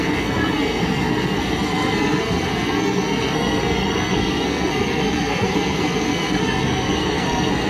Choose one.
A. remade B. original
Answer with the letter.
A